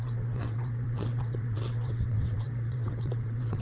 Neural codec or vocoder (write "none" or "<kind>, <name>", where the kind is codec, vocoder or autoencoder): vocoder, WaveNeXt